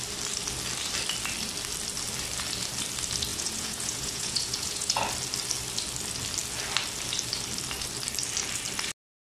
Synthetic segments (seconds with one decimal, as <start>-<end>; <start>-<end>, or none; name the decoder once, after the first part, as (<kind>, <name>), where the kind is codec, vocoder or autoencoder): 3.3-5.0 (vocoder, Vocos)

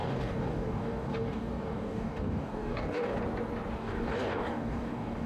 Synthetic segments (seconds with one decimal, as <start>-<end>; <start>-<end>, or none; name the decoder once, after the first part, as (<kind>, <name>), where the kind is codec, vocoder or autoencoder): 0.0-3.2 (codec, DAC); 3.8-5.3

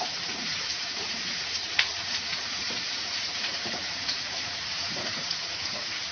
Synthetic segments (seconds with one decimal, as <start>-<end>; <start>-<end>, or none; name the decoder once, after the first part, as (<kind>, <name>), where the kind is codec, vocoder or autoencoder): 0.0-6.1 (vocoder, Vocos)

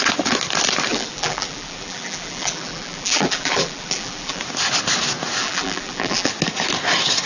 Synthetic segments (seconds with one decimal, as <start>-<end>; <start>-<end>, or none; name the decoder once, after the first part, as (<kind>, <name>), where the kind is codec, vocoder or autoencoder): 0.9-4.4 (vocoder, BigVGAN v2); 5.4-6.3

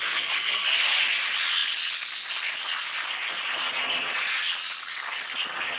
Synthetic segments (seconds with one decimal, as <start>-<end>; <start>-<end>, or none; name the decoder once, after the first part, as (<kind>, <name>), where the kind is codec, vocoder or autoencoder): none

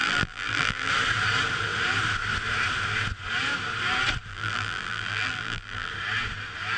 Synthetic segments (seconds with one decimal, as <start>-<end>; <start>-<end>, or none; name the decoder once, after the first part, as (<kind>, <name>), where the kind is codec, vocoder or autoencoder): 0.0-0.9 (vocoder, BigVGAN v2); 4.3-5.9

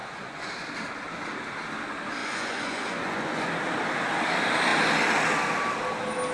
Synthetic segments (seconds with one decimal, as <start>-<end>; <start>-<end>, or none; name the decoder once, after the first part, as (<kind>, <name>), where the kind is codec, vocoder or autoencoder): 0.0-0.5 (vocoder, Vocos); 2.2-3.5